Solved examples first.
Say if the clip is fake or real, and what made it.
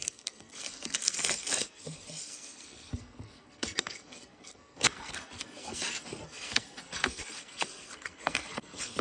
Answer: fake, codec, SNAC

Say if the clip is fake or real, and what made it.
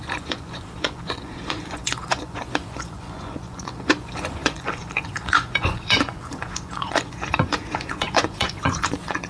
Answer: fake, vocoder, Vocos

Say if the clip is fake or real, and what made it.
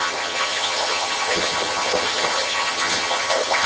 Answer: fake, vocoder, HiFi-GAN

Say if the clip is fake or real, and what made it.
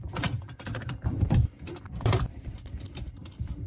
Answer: fake, vocoder, BigVGAN v2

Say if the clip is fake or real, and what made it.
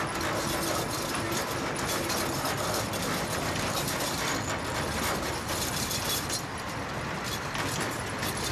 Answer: fake, vocoder, BigVGAN v2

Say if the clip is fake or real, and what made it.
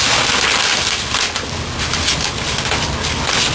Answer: real